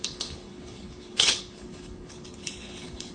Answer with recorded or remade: remade